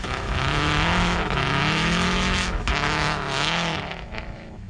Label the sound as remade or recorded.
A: remade